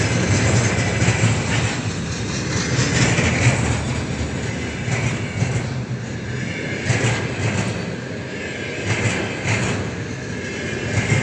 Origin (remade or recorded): recorded